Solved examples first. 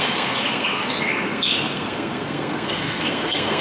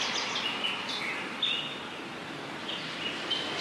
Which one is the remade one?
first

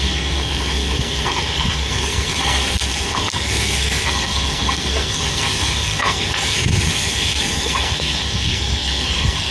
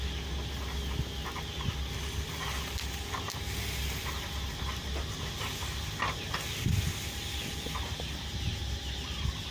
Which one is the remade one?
first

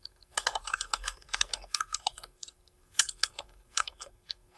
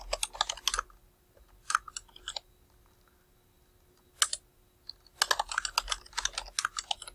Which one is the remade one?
first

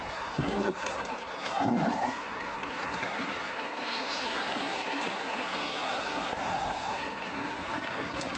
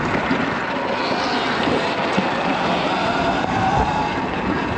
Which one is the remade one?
first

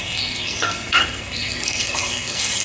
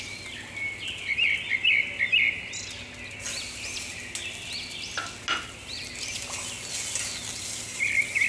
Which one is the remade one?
first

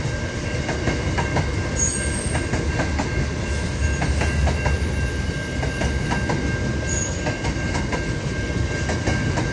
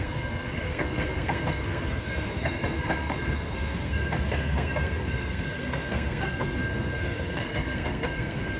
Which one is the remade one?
second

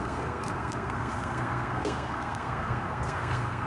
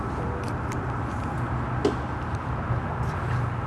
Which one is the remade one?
first